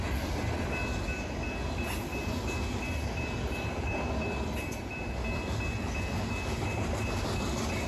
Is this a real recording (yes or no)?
yes